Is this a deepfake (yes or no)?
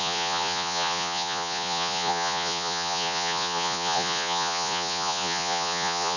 yes